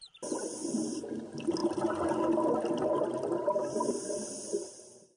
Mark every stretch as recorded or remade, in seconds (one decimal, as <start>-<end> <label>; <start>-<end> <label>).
0.0-5.2 recorded